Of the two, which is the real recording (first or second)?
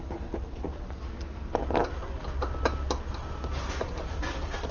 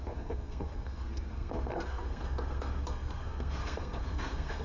first